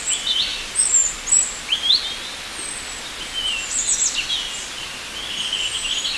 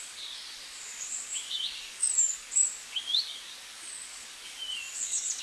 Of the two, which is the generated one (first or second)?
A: second